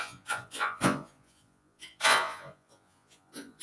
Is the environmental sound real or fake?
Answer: fake